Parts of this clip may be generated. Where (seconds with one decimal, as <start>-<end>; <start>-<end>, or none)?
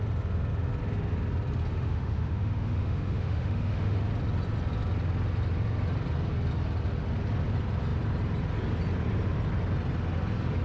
1.7-4.0